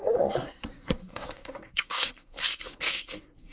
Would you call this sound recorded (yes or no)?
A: no